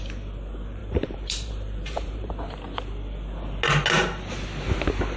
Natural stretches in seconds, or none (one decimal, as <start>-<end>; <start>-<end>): 0.0-0.8; 2.3-5.2